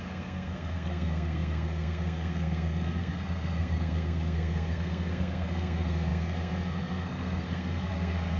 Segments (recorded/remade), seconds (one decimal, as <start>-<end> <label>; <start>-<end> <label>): 0.0-8.4 remade